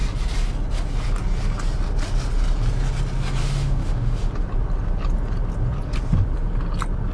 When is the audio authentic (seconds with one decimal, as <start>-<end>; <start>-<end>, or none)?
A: 0.0-3.4; 4.3-7.1